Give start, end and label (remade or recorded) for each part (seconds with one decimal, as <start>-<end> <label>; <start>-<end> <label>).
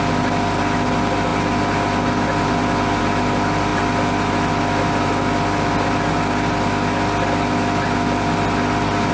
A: 0.0-9.1 recorded